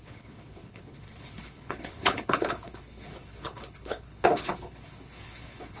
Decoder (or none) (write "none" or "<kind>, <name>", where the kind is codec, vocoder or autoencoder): codec, HILCodec